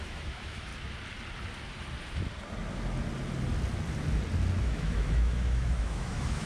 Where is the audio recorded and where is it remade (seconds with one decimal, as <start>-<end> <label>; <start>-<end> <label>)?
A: 0.0-0.7 remade; 0.7-4.6 recorded; 4.6-6.5 remade